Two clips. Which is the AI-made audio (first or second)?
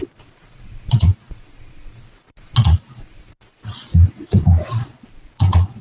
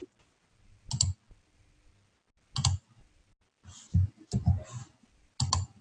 first